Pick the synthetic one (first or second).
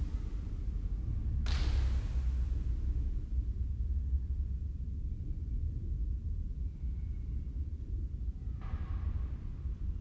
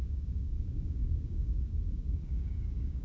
second